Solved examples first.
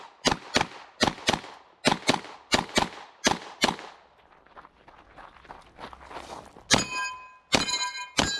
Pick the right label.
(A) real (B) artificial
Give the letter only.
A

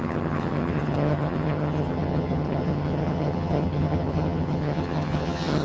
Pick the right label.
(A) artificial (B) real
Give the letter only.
A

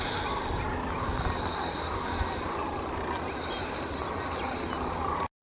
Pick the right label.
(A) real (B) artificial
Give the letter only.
A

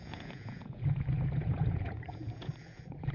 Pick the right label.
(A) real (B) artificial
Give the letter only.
B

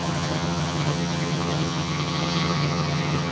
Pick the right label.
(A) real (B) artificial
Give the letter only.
B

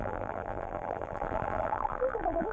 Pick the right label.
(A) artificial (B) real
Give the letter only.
A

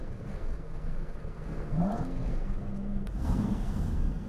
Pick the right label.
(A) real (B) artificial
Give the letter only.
B